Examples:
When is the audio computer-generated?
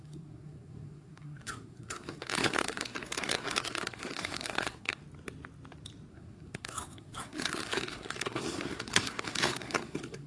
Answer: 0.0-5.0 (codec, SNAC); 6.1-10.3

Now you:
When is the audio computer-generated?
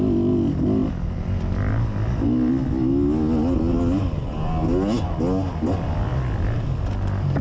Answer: none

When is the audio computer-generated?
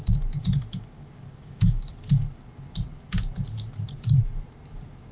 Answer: 0.4-1.9 (codec, DAC)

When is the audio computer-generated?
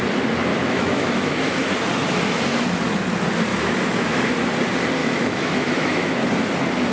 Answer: 0.5-1.7 (autoencoder, DAC-VAE); 3.5-4.3; 5.0-6.1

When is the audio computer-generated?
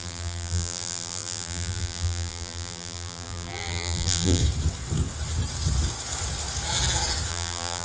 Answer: 0.0-4.4 (vocoder, BigVGAN v2); 7.3-7.8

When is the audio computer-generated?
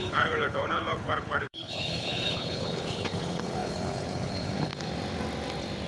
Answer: 0.0-4.7 (codec, HILCodec)